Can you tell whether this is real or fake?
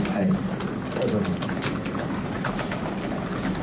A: real